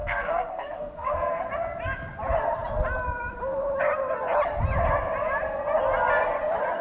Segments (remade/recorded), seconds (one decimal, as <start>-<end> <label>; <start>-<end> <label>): 0.0-1.3 remade; 1.3-6.8 recorded